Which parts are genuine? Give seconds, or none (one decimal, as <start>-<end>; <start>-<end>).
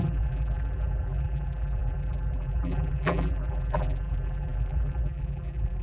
none